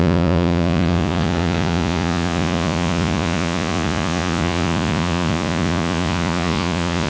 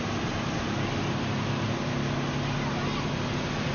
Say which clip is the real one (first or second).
second